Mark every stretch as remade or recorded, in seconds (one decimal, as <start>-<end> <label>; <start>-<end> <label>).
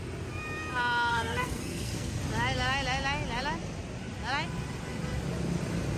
0.0-1.1 recorded; 1.1-2.2 remade; 2.2-6.0 recorded